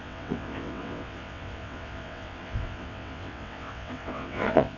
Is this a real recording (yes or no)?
no